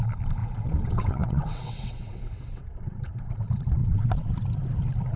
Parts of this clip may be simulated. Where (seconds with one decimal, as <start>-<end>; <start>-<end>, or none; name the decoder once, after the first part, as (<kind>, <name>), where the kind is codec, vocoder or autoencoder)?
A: 0.4-3.3 (vocoder, WaveNeXt); 3.8-4.3